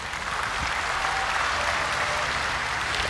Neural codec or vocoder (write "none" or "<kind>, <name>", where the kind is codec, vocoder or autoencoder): none